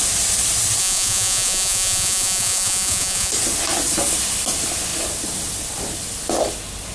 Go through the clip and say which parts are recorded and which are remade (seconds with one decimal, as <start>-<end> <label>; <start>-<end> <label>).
0.0-0.8 recorded; 0.8-3.3 remade; 3.3-6.9 recorded